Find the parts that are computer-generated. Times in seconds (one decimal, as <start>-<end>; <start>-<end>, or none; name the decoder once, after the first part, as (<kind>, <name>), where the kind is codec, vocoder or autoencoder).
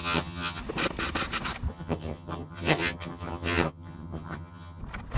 0.0-0.6 (vocoder, HiFi-GAN); 1.7-4.8